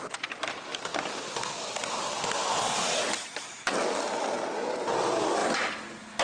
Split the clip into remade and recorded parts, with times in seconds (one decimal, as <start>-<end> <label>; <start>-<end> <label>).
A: 0.0-5.4 recorded; 5.4-6.2 remade